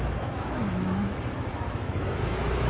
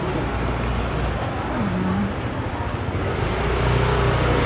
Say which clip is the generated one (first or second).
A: first